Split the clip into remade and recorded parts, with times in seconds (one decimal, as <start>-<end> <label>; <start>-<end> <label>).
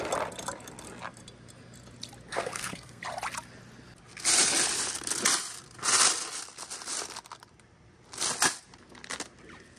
0.0-2.3 recorded; 2.3-3.0 remade; 3.0-9.8 recorded